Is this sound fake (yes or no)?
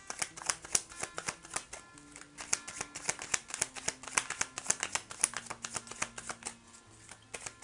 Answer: no